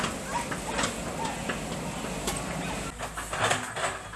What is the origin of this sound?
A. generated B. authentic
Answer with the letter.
B